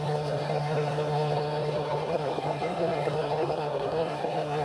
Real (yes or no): no